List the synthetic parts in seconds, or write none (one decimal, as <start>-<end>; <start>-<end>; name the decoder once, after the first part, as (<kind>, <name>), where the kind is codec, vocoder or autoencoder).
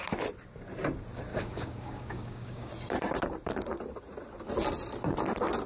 1.3-2.7 (codec, DAC)